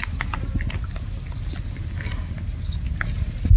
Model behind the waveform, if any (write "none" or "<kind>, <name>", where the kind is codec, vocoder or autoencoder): none